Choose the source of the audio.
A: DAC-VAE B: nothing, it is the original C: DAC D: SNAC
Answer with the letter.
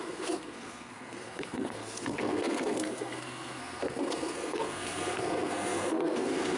D